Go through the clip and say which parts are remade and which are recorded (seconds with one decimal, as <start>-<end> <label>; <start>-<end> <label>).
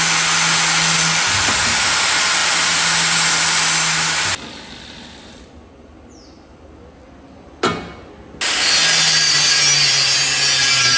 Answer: 0.0-11.0 recorded